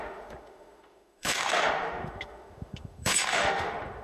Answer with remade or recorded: remade